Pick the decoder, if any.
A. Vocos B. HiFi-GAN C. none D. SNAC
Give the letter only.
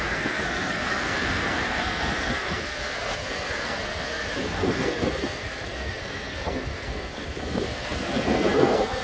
D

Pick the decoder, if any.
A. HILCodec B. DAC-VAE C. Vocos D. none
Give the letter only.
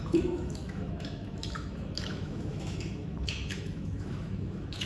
B